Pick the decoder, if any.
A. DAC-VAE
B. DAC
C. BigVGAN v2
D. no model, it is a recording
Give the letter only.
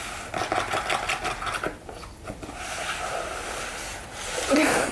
D